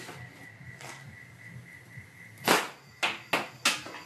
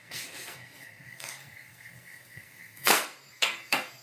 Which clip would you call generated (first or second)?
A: second